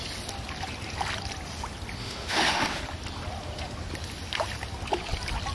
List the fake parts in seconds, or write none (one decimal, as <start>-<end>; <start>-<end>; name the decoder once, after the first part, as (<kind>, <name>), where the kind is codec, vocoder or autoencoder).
2.0-2.8 (autoencoder, DAC-VAE)